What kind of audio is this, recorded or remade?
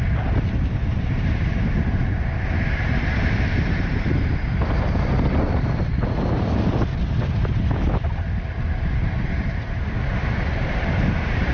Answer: recorded